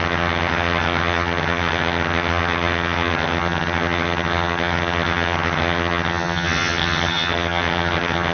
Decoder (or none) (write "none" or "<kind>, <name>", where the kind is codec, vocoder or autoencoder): vocoder, HiFi-GAN